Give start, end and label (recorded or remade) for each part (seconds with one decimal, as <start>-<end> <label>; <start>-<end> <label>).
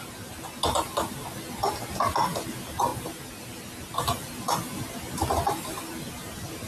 0.0-6.7 recorded